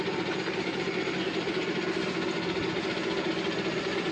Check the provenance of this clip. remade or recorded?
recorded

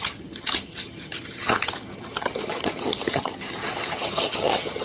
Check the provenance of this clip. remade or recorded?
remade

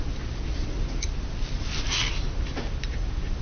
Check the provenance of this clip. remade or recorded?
recorded